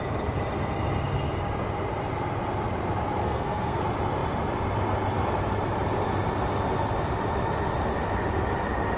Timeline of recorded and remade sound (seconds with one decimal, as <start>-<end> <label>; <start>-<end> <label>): 0.0-3.2 recorded; 3.2-3.8 remade; 3.8-9.0 recorded